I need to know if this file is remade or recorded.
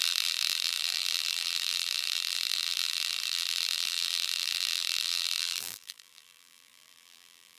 remade